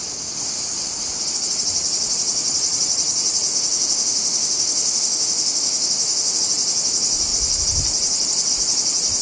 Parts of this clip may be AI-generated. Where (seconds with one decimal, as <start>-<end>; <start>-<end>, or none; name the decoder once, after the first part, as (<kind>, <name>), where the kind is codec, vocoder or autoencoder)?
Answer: 3.5-6.4 (autoencoder, DAC-VAE)